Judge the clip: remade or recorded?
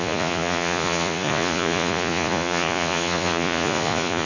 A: remade